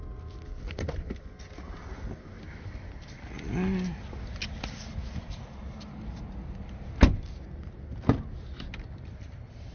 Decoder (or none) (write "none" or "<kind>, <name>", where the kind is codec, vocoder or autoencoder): none